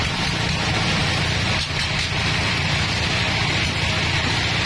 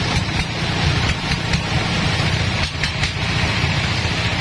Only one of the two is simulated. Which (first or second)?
second